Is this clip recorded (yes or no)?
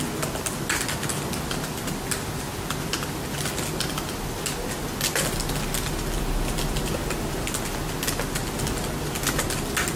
yes